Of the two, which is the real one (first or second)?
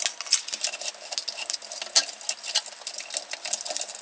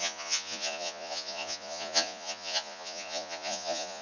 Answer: first